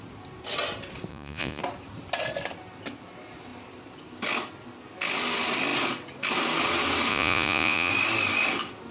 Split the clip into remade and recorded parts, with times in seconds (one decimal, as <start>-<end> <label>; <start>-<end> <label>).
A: 0.0-1.1 recorded; 1.1-1.6 remade; 1.6-7.1 recorded; 7.1-7.9 remade; 7.9-8.9 recorded